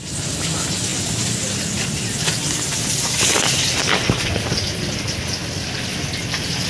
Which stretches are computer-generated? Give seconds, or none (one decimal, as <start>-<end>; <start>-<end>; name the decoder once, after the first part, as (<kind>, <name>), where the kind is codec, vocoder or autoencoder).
none